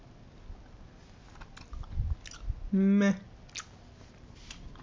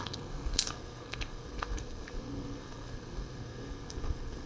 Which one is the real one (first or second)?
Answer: first